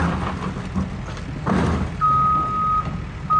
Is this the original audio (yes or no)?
yes